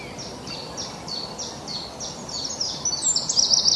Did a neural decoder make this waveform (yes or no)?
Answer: no